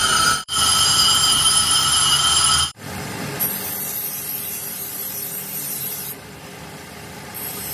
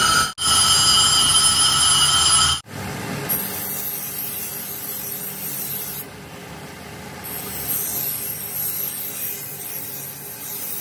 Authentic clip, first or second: second